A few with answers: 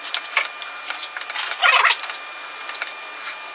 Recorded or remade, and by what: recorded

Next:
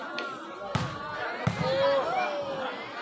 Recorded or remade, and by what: recorded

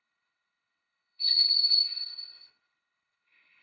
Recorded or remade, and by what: remade, codec, HILCodec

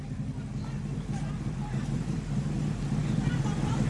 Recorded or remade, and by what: recorded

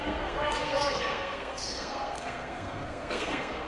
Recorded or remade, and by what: remade, codec, SNAC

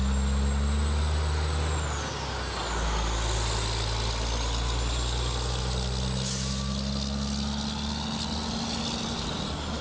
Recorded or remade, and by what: recorded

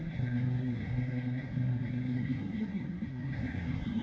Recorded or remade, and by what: remade, codec, SNAC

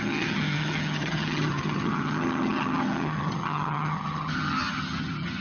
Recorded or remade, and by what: remade, vocoder, HiFi-GAN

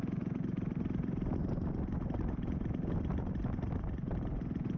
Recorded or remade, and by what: recorded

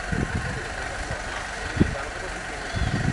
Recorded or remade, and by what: recorded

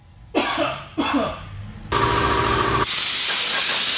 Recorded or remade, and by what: recorded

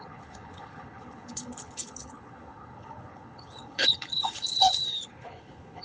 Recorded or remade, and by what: remade, codec, HILCodec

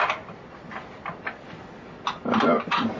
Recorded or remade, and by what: recorded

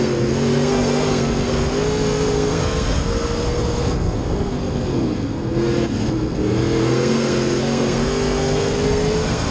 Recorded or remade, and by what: remade, codec, SNAC